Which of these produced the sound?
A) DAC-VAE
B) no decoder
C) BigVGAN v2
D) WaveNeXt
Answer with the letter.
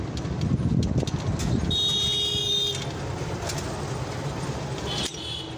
B